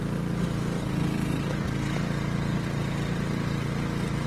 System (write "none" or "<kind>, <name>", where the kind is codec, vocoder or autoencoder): none